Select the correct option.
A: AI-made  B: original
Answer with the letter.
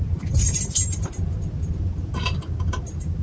B